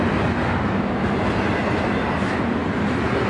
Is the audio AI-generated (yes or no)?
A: no